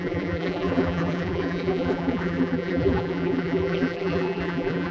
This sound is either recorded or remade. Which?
remade